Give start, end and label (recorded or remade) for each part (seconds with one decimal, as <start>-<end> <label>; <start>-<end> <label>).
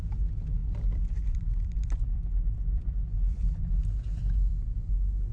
0.0-0.6 recorded; 0.6-3.8 remade; 3.8-5.3 recorded